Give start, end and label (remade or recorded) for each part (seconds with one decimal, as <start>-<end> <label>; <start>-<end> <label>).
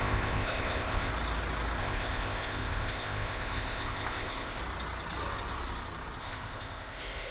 0.0-1.1 remade; 1.1-1.8 recorded; 1.8-4.6 remade; 4.6-6.2 recorded; 6.2-7.3 remade